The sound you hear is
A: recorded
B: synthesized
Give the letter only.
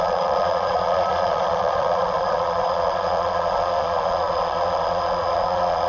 B